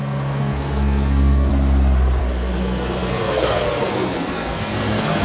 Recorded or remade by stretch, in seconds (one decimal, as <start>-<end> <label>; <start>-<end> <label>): 0.0-1.5 remade; 1.5-2.2 recorded; 2.2-5.2 remade